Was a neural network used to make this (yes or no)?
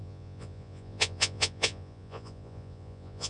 yes